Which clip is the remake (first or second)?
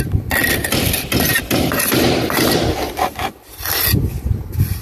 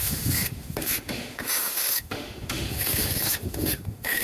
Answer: second